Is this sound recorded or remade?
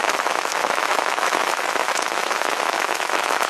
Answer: remade